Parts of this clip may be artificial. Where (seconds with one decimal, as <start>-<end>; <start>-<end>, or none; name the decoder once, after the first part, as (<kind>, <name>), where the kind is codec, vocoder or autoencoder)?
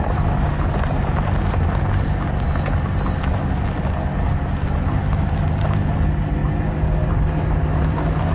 none